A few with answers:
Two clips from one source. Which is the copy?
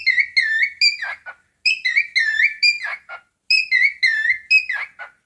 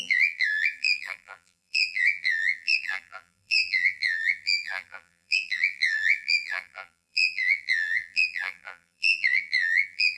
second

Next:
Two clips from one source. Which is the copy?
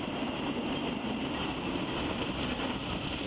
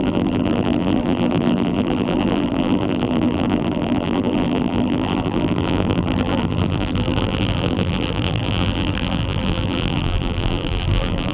second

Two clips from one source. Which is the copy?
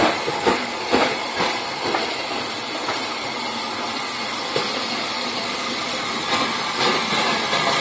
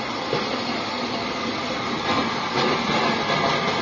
first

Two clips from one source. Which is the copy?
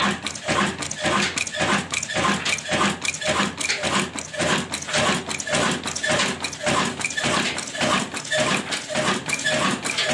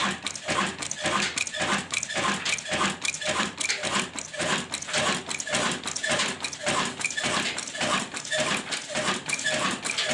second